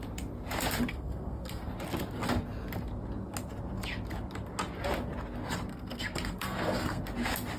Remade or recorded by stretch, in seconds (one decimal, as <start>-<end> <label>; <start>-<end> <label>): 0.0-0.9 recorded; 0.9-1.7 remade; 1.7-5.7 recorded; 5.7-7.0 remade; 7.0-7.6 recorded